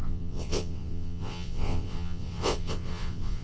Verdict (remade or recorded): remade